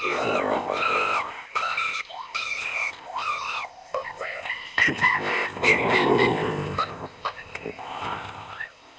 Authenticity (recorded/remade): remade